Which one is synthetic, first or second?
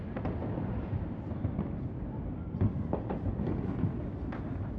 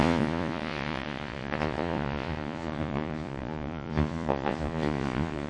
second